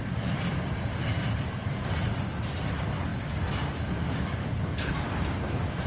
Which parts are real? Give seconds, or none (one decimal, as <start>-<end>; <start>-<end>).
0.0-4.4; 4.9-5.9